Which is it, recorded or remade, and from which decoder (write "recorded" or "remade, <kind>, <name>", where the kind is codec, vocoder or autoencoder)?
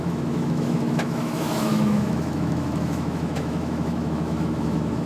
remade, autoencoder, DAC-VAE